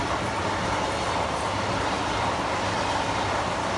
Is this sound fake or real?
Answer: real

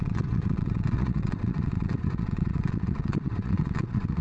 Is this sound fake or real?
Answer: fake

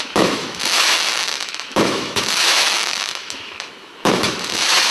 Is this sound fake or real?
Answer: fake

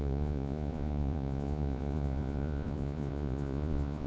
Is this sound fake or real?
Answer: fake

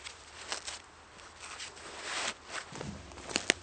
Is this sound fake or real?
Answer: real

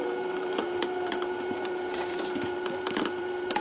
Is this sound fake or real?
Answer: fake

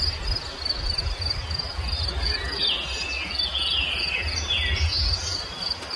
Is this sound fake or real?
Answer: real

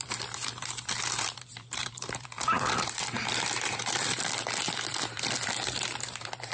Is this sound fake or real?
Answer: fake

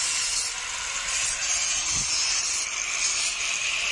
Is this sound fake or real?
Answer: real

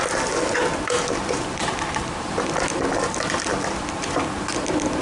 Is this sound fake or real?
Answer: real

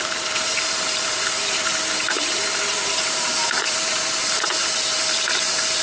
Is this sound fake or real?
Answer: fake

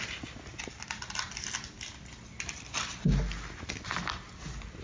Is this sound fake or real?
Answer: real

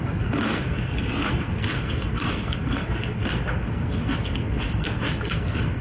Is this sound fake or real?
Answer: fake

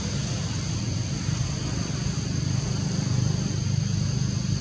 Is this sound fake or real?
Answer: real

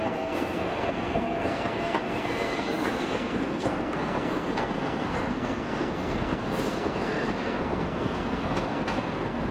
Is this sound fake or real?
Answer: fake